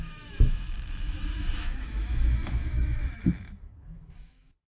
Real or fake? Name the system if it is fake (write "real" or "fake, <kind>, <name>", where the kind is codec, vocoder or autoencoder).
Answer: fake, autoencoder, DAC-VAE